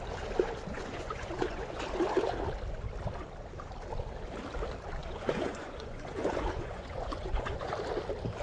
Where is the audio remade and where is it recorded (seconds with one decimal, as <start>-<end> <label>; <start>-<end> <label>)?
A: 0.0-0.7 recorded; 0.7-1.8 remade; 1.8-5.0 recorded; 5.0-7.7 remade; 7.7-8.4 recorded